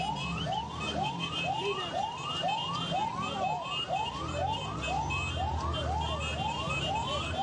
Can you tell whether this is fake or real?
real